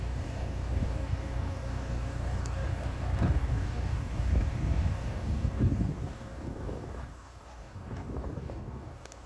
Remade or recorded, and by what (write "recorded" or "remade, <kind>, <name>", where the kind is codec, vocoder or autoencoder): remade, codec, DAC